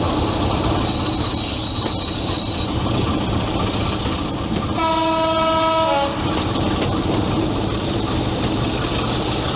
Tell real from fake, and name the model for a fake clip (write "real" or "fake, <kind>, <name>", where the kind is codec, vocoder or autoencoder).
real